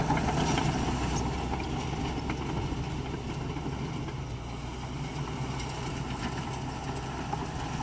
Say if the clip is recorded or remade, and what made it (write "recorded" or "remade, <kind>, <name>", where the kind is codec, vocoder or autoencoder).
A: recorded